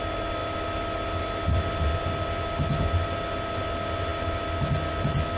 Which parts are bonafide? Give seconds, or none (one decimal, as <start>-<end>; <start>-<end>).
0.0-5.4